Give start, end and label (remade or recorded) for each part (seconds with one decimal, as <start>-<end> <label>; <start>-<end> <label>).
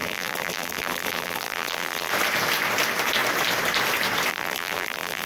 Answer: 0.0-2.1 remade; 2.1-4.3 recorded; 4.3-5.3 remade